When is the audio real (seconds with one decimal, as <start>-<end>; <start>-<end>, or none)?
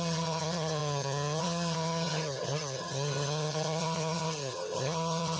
none